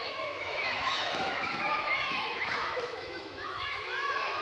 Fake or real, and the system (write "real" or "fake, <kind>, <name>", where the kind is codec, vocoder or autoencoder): fake, autoencoder, DAC-VAE